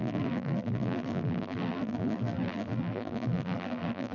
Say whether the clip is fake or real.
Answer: fake